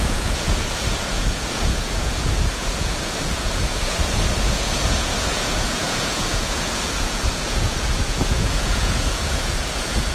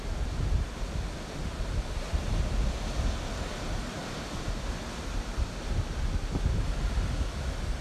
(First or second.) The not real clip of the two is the first